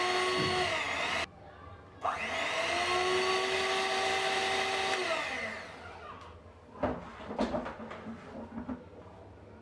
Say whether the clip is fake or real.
real